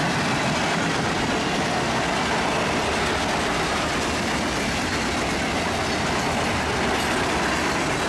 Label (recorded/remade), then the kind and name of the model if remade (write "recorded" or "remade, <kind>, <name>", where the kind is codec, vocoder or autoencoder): recorded